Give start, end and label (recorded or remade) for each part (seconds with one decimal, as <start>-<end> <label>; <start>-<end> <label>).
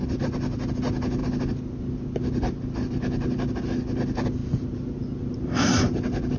0.0-6.4 recorded